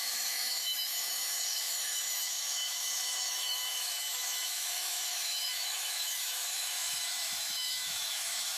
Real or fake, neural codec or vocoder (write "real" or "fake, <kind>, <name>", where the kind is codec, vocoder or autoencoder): fake, autoencoder, DAC-VAE